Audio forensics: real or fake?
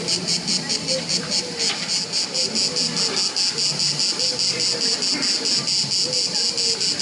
real